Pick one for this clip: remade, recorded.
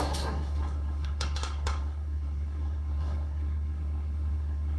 remade